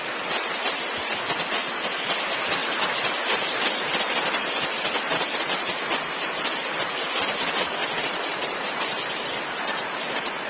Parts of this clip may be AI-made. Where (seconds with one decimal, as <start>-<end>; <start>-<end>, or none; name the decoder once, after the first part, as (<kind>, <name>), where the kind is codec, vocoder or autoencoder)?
2.6-4.3 (vocoder, BigVGAN v2); 5.1-5.7; 7.8-9.3